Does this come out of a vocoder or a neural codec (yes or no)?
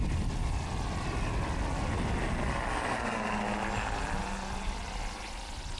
no